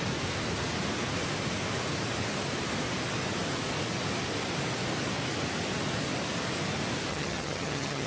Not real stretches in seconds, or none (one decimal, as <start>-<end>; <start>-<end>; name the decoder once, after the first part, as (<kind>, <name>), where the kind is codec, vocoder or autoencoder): 7.1-8.1 (vocoder, HiFi-GAN)